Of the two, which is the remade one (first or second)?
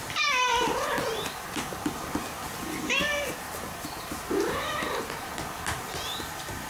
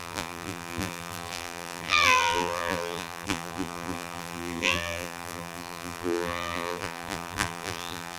second